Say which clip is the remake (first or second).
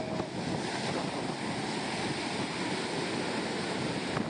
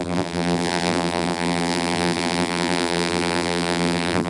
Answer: second